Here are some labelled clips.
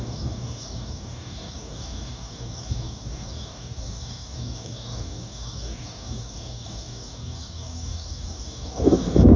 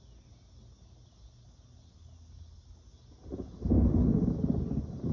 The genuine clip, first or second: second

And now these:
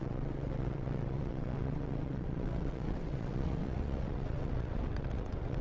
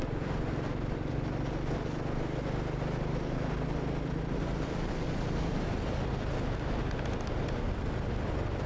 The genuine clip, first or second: second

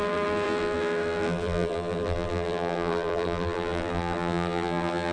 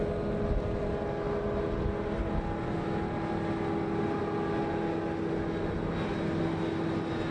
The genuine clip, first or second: second